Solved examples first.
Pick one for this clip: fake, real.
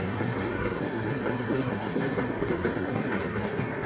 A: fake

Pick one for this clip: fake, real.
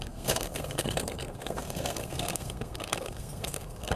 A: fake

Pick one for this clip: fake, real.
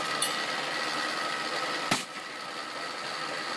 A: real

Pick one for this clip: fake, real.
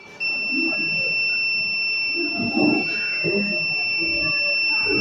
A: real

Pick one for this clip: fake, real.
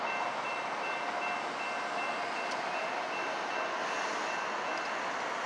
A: real